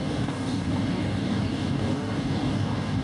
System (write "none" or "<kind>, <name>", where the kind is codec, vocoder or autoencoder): codec, DAC